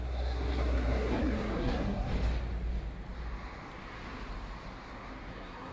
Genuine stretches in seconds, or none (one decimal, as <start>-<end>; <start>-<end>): 2.1-5.3